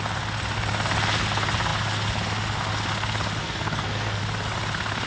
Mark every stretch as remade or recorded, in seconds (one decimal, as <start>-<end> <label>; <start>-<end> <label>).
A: 0.0-3.4 recorded; 3.4-4.2 remade; 4.2-5.1 recorded